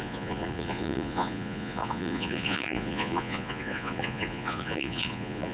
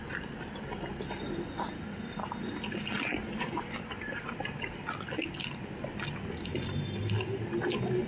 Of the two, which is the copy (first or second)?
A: first